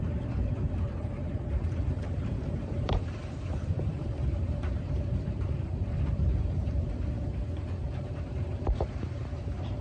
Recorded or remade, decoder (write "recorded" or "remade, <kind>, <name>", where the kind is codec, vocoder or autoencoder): remade, vocoder, BigVGAN v2